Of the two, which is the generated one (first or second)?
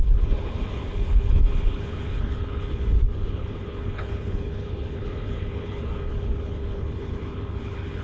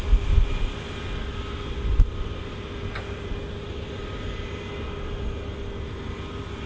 first